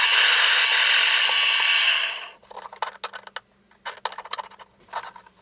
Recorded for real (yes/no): yes